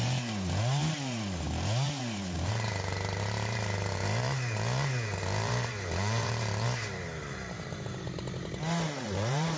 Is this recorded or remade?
remade